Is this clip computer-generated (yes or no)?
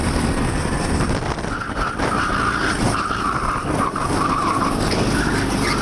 no